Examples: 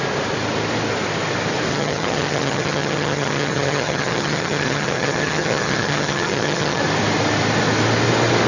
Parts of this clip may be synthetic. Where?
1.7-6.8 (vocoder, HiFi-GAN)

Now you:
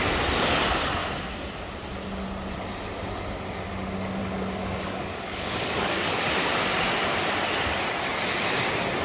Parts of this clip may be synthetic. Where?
4.2-6.5 (codec, DAC)

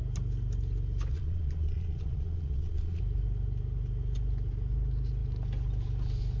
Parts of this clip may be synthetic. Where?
1.1-3.0 (vocoder, Vocos)